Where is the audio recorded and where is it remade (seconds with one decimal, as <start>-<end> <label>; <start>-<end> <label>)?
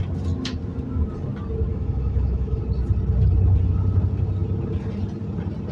0.0-1.7 recorded; 1.7-2.6 remade; 2.6-5.7 recorded